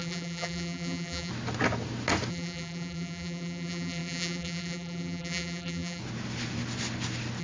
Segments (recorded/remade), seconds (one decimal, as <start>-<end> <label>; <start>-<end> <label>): 0.0-1.3 remade; 1.3-2.3 recorded; 2.3-6.0 remade; 6.0-7.4 recorded